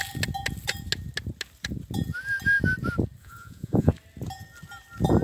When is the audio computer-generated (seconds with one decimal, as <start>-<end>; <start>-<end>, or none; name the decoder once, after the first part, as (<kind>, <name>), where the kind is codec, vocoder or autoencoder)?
3.2-3.9 (vocoder, Vocos)